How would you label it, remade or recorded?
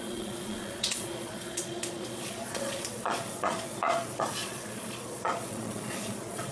remade